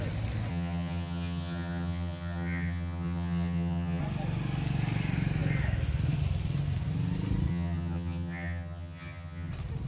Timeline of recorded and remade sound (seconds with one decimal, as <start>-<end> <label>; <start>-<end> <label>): 0.0-0.5 recorded; 0.5-4.0 remade; 4.0-7.5 recorded; 7.5-9.5 remade; 9.5-9.9 recorded